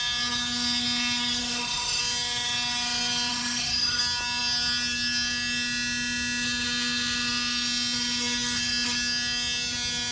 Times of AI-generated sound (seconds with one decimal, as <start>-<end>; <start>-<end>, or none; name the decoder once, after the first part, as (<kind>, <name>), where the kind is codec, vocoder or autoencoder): 1.4-2.0 (autoencoder, DAC-VAE); 3.3-4.0